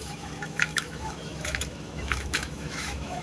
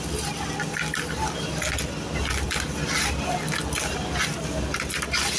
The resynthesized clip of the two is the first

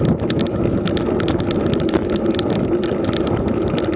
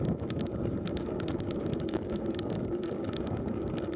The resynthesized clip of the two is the second